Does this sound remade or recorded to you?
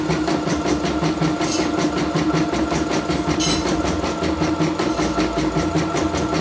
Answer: recorded